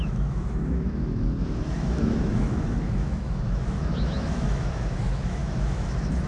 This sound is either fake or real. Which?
fake